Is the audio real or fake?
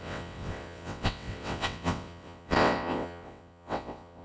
fake